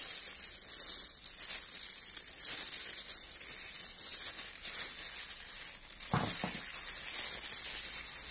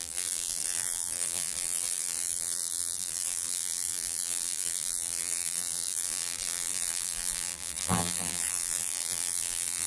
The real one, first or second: first